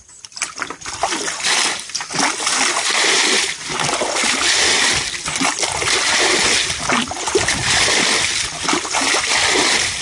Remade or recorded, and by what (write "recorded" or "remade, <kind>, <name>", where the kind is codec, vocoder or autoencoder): recorded